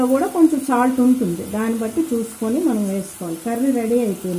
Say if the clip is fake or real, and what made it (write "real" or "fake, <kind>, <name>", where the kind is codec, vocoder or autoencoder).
real